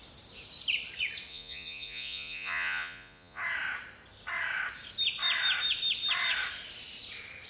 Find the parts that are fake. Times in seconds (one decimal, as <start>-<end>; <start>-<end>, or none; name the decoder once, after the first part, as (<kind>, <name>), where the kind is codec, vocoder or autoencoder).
1.3-3.4 (vocoder, Vocos)